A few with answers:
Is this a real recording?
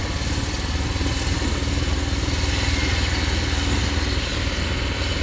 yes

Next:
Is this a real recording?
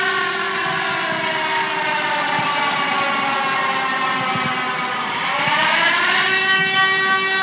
yes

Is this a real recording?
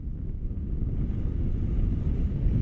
yes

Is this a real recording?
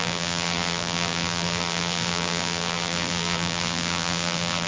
no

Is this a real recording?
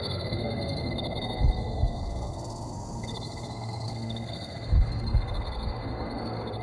no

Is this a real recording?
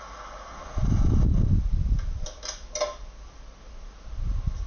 yes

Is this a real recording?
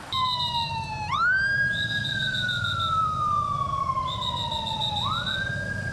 no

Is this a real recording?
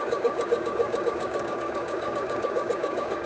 no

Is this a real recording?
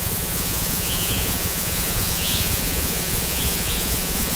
no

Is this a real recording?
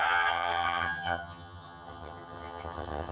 no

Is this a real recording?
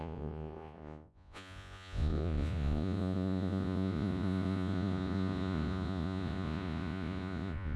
no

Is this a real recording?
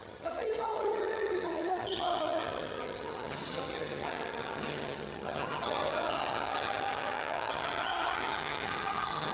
no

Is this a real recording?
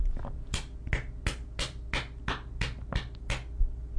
yes